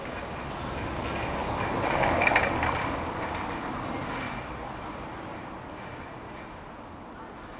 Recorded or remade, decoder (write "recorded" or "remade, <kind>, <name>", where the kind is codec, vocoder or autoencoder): recorded